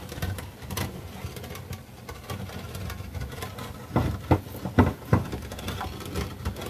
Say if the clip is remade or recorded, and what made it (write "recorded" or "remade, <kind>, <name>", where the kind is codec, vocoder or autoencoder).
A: recorded